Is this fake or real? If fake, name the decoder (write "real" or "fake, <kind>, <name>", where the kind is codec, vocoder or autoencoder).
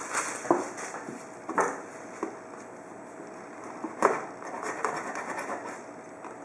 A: real